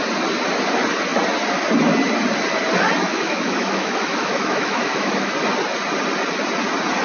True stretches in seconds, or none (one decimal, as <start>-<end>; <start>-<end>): 0.0-3.1; 5.3-7.0